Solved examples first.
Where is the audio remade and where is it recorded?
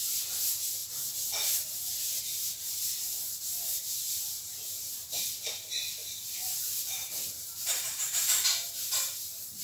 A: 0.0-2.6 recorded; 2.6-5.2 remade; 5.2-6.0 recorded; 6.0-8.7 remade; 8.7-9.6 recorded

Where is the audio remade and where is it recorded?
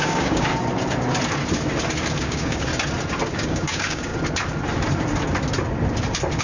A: 0.0-0.5 remade; 0.5-2.2 recorded; 2.2-2.7 remade; 2.7-3.3 recorded; 3.3-4.1 remade; 4.1-6.4 recorded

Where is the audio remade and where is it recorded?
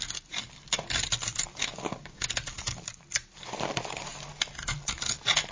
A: 0.0-1.6 recorded; 1.6-2.3 remade; 2.3-5.5 recorded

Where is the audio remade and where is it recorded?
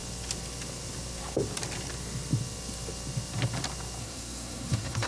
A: 0.0-4.0 recorded; 4.0-5.1 remade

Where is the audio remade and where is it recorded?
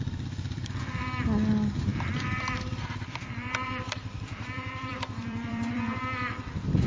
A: 0.0-1.9 recorded; 1.9-6.0 remade; 6.0-6.9 recorded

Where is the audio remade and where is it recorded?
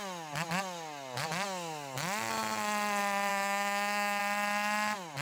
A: 0.0-3.3 recorded; 3.3-4.2 remade; 4.2-5.2 recorded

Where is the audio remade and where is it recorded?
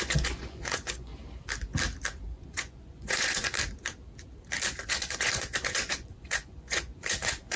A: 0.0-1.1 remade; 1.1-2.3 recorded; 2.3-3.6 remade; 3.6-4.9 recorded; 4.9-7.6 remade